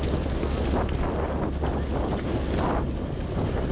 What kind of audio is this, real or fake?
real